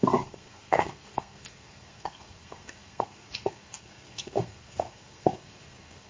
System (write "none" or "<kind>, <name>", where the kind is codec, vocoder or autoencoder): codec, SNAC